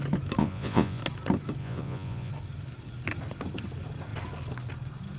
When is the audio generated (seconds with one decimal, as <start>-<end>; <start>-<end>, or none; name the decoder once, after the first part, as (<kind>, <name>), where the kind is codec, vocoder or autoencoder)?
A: 0.4-1.0 (vocoder, Vocos); 1.6-2.3